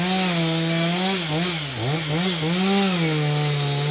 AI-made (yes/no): no